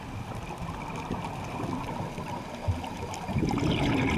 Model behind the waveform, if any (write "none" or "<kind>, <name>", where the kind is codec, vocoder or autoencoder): none